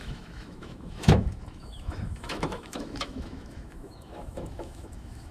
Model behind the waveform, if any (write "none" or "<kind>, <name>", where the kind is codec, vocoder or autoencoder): autoencoder, DAC-VAE